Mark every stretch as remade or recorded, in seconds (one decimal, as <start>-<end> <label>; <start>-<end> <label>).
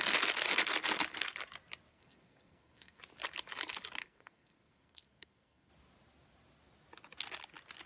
0.0-1.9 recorded; 1.9-3.0 remade; 3.0-4.0 recorded; 4.0-5.7 remade; 5.7-7.9 recorded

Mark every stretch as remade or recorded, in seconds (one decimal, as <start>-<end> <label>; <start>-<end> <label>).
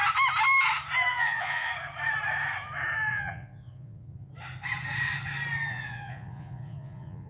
0.0-1.1 recorded; 1.1-1.7 remade; 1.7-3.1 recorded; 3.1-4.3 remade; 4.3-5.7 recorded; 5.7-7.3 remade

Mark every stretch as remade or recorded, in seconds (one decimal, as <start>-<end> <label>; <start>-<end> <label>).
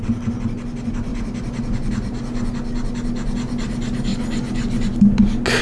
0.0-5.6 recorded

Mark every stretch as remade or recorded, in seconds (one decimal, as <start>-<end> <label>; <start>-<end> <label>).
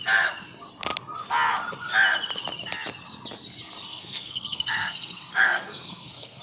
0.0-3.9 recorded; 3.9-6.4 remade